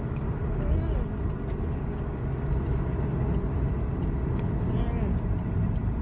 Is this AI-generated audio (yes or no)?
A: no